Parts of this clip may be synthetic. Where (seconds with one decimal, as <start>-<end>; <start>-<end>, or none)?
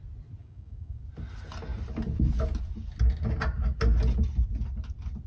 0.4-1.0